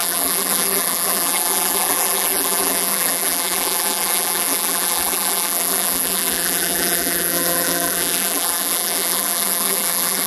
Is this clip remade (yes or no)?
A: yes